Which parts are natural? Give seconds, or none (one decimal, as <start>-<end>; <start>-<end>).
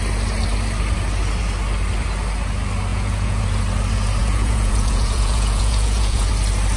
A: 0.0-2.9; 3.4-4.2; 6.3-6.8